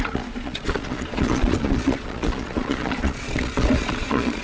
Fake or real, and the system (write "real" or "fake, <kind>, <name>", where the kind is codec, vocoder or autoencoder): fake, vocoder, Vocos